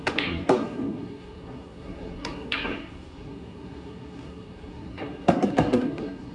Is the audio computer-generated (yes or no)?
yes